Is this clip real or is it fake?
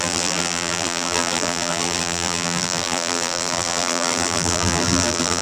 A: fake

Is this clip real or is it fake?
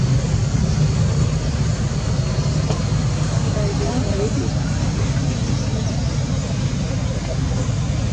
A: real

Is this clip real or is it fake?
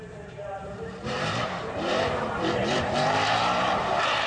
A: fake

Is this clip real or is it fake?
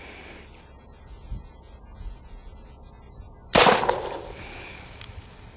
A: real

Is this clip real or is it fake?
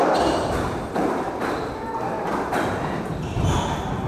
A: fake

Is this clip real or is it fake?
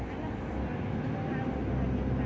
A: real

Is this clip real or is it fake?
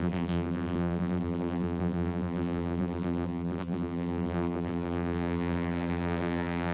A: fake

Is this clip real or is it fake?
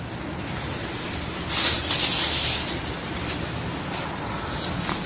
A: fake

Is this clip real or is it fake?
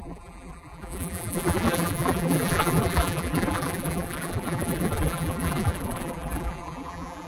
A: fake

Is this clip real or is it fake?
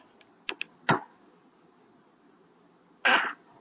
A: real